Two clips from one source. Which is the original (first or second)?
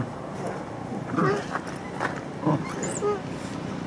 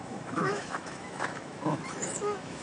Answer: first